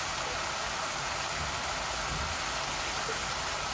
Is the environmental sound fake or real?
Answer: real